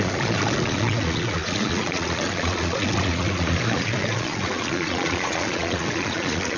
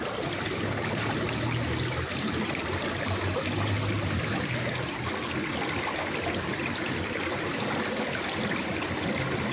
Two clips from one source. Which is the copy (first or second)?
first